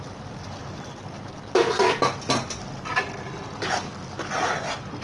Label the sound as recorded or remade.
recorded